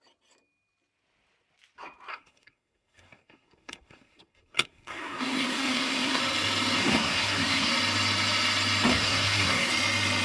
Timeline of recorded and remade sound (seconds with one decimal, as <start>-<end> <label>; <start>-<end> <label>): 0.0-2.1 recorded; 2.1-6.2 remade; 6.2-6.8 recorded; 6.8-7.7 remade; 7.7-8.9 recorded; 8.9-9.7 remade; 9.7-10.2 recorded